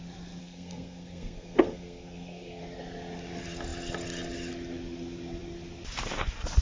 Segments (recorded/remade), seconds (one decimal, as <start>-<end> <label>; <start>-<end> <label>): 0.0-0.4 recorded; 0.4-2.6 remade; 2.6-6.6 recorded